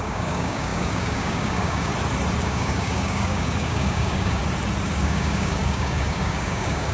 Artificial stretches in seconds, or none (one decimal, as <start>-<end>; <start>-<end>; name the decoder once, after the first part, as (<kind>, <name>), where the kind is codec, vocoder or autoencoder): 0.0-1.9 (codec, DAC); 2.4-4.4; 4.9-6.9